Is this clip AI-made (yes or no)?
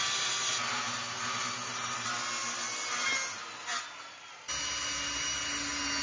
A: no